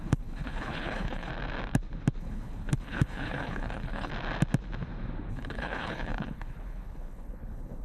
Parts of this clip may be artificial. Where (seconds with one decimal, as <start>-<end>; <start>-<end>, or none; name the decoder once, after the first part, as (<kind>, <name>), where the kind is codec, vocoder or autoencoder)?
0.0-1.3 (codec, HILCodec); 2.2-4.1; 5.3-7.8